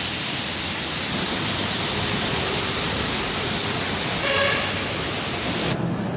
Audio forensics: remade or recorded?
recorded